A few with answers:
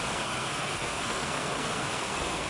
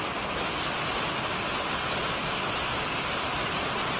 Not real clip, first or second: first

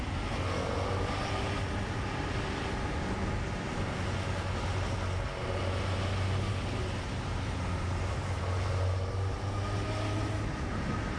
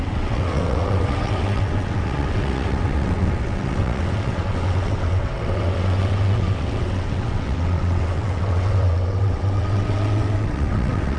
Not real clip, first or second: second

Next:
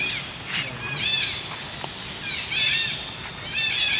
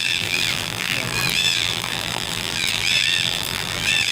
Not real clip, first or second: second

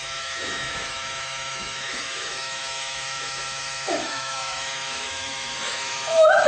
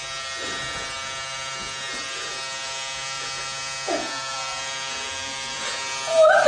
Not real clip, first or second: first